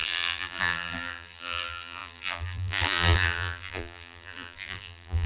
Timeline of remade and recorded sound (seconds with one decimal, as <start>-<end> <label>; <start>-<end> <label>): 0.0-5.3 remade